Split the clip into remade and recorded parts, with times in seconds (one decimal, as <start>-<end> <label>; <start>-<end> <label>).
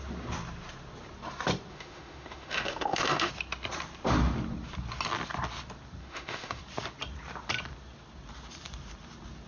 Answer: 0.0-1.7 recorded; 1.7-3.3 remade; 3.3-6.0 recorded; 6.0-6.6 remade; 6.6-9.5 recorded